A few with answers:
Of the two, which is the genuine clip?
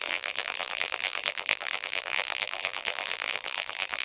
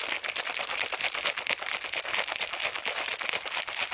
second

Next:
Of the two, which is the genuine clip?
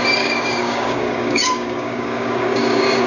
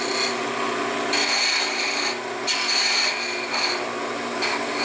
second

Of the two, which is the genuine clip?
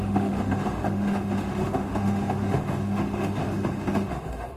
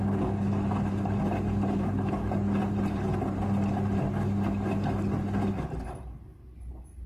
second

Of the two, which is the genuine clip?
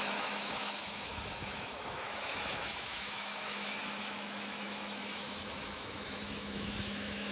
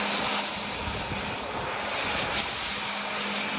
second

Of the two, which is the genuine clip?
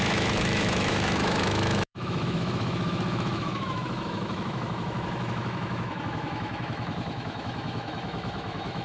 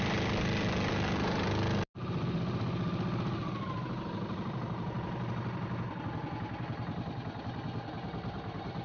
second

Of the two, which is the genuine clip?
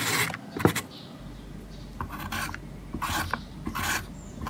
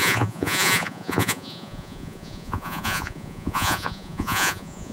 first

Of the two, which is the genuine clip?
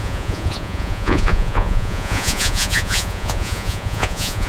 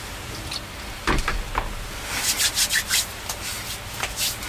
second